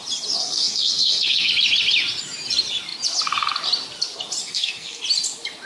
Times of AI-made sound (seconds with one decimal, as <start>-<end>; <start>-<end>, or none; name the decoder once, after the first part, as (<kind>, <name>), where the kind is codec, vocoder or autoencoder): 0.4-1.5 (codec, SNAC); 4.4-5.0